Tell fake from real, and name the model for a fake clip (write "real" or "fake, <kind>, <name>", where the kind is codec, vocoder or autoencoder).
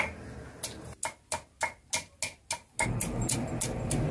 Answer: real